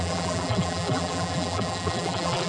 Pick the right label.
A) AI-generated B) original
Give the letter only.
A